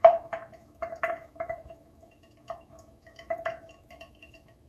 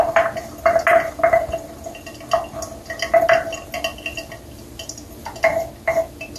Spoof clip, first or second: first